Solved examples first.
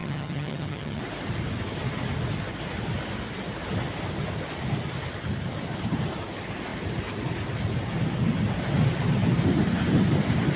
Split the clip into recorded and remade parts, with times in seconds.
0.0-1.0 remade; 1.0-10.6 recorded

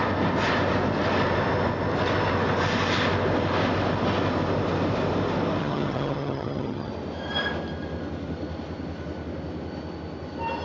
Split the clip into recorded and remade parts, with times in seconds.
0.0-5.6 recorded; 5.6-6.9 remade; 6.9-10.6 recorded

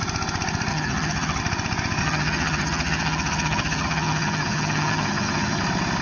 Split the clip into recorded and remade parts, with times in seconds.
0.0-0.7 recorded; 0.7-1.4 remade; 1.4-2.0 recorded; 2.0-5.6 remade; 5.6-6.0 recorded

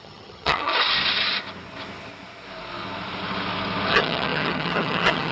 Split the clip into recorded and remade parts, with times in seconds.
0.0-0.7 remade; 0.7-3.9 recorded; 3.9-5.3 remade

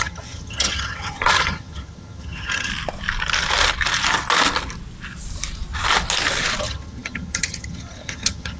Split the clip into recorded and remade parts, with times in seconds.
0.0-2.7 remade; 2.7-6.6 recorded; 6.6-8.6 remade